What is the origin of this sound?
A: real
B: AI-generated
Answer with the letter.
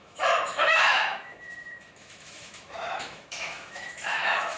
B